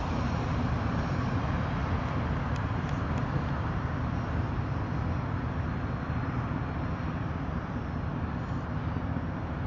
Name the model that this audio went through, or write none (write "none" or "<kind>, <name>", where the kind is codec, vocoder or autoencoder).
none